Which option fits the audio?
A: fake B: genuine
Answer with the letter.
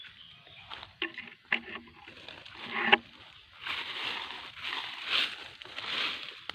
B